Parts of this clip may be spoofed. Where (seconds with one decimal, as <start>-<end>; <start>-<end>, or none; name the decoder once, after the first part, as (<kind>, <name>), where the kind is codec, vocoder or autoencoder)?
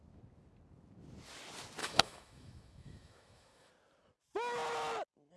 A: 1.8-3.7 (autoencoder, DAC-VAE)